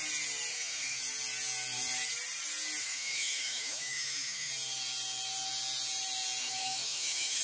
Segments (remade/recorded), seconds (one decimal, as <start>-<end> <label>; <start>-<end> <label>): 0.0-0.5 recorded; 0.5-1.0 remade; 1.0-2.8 recorded; 2.8-4.5 remade; 4.5-6.4 recorded; 6.4-7.4 remade